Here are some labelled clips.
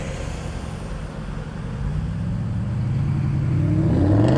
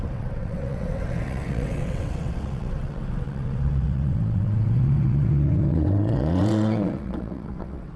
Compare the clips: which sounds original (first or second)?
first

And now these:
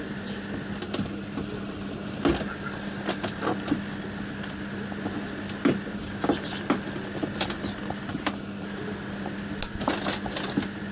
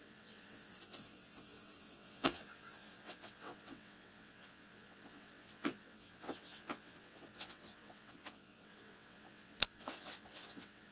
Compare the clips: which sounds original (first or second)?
first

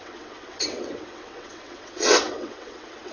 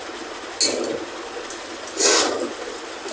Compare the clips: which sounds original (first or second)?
second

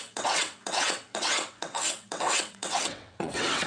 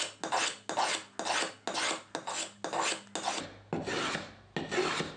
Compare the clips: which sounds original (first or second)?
second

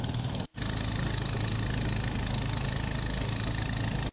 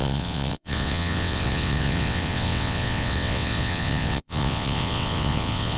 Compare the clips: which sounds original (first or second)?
first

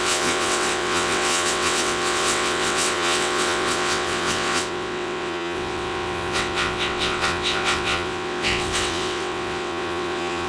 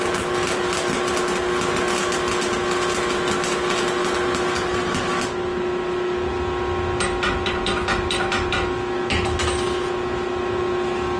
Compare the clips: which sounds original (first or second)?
second